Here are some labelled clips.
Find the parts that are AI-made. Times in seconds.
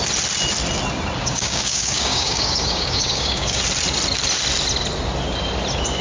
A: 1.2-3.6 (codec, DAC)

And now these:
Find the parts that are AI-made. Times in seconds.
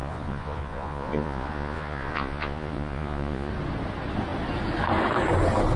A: 0.0-3.5 (vocoder, Vocos)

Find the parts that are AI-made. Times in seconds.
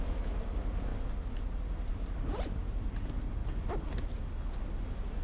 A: 1.9-2.6 (vocoder, BigVGAN v2); 3.4-4.4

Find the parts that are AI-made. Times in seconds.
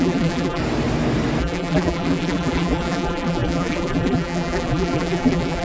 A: 0.0-0.6 (vocoder, BigVGAN v2); 1.4-5.6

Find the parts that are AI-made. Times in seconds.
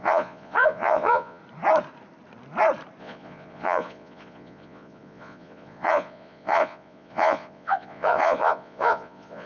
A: 0.0-1.4 (vocoder, Vocos); 3.0-9.5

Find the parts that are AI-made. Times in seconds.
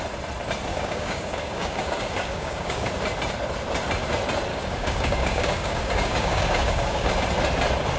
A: 0.7-2.9 (codec, DAC); 4.5-7.1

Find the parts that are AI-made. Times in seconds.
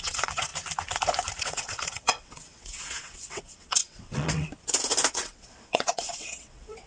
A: 0.0-0.5 (vocoder, WaveNeXt); 1.4-4.5; 5.1-6.9